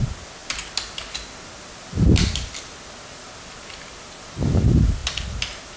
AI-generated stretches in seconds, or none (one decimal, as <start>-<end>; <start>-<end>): none